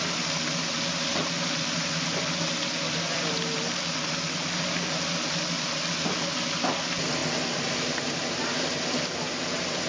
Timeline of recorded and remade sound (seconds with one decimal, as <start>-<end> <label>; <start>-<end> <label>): 0.0-9.9 recorded